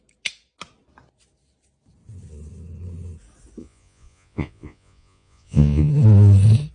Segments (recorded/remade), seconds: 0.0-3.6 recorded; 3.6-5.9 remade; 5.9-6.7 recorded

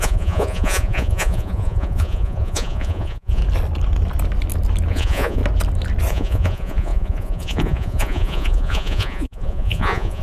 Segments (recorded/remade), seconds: 0.0-3.4 remade; 3.4-4.9 recorded; 4.9-5.4 remade; 5.4-6.1 recorded; 6.1-10.2 remade

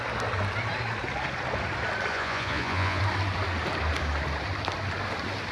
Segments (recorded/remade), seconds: 0.0-2.1 recorded; 2.1-3.0 remade; 3.0-5.5 recorded

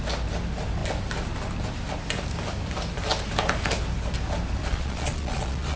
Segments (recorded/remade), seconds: 0.0-4.6 recorded; 4.6-5.8 remade

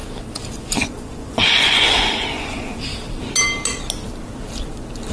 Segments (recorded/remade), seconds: 0.0-0.6 recorded; 0.6-2.9 remade; 2.9-5.1 recorded

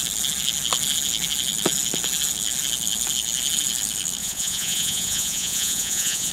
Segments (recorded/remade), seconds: 0.0-4.2 recorded; 4.2-6.3 remade

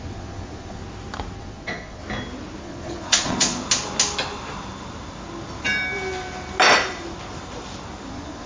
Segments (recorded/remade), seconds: 0.0-0.8 remade; 0.8-1.4 recorded; 1.4-2.0 remade; 2.0-2.6 recorded; 2.6-3.6 remade; 3.6-8.1 recorded; 8.1-8.5 remade